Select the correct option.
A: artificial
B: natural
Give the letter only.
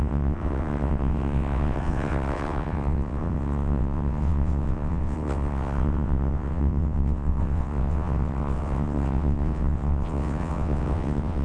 A